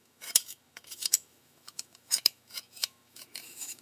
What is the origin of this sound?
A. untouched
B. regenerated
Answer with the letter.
B